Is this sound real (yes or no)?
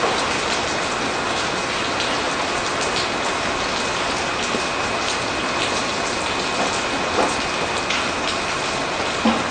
yes